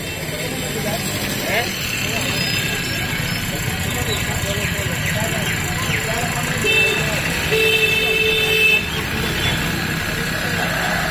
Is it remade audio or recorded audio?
recorded